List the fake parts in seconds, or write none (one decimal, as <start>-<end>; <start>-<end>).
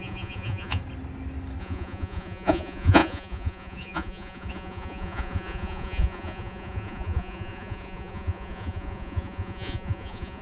0.0-0.8; 1.6-10.4